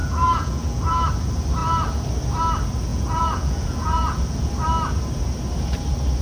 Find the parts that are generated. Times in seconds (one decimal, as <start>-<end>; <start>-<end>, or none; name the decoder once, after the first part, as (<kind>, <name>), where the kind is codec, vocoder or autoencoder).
0.0-1.1 (vocoder, Vocos); 2.9-4.5